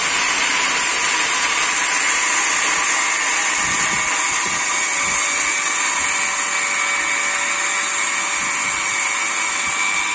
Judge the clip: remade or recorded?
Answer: recorded